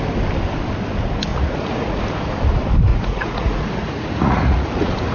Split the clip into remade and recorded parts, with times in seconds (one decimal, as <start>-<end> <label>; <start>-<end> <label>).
0.0-1.3 recorded; 1.3-2.0 remade; 2.0-2.9 recorded; 2.9-5.1 remade